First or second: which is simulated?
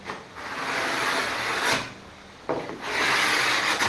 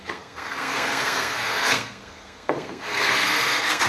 second